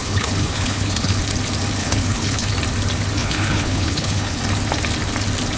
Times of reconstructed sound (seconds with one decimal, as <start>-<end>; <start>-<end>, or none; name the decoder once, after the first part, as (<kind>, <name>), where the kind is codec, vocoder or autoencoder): 0.0-1.2 (codec, HILCodec); 1.8-2.5; 3.2-4.4